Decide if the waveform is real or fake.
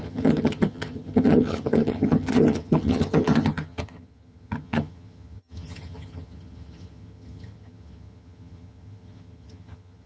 fake